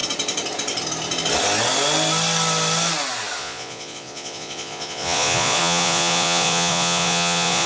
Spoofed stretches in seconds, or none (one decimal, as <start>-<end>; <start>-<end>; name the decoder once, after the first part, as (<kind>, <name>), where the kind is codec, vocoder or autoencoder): 3.4-7.7 (vocoder, Vocos)